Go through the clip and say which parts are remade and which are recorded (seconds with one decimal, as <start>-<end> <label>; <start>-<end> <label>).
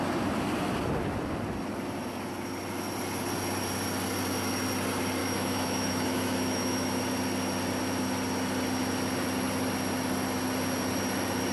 0.0-5.2 recorded; 5.2-7.0 remade; 7.0-11.5 recorded